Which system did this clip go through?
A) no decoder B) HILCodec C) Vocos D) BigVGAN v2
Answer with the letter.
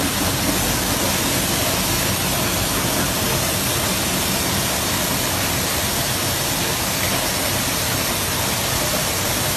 A